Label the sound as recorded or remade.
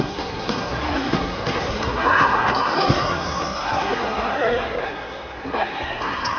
remade